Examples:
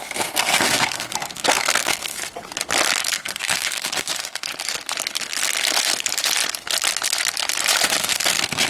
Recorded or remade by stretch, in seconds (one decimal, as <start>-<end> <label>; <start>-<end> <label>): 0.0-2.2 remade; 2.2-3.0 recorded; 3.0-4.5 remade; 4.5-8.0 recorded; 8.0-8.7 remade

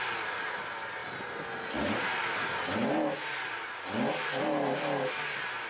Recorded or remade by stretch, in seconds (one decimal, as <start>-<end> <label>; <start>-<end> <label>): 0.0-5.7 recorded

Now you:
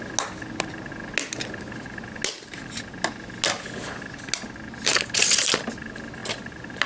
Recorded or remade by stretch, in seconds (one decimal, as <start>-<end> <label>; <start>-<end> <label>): 0.0-6.9 recorded

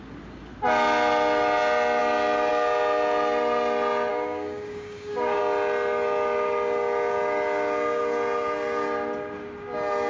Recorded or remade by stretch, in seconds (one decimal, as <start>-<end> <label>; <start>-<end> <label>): 0.0-4.1 recorded; 4.1-5.4 remade; 5.4-10.1 recorded